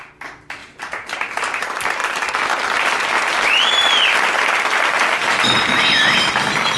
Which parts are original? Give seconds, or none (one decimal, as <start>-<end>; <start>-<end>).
0.6-1.6